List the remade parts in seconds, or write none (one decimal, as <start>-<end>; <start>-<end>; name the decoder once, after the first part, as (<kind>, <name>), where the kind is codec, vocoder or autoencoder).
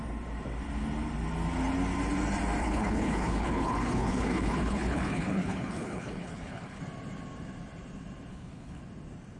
2.6-6.8 (codec, HILCodec); 8.3-8.8